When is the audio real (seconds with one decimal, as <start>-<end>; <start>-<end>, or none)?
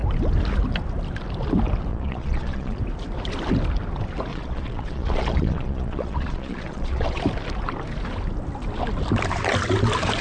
0.0-1.9; 2.8-4.3; 7.2-10.2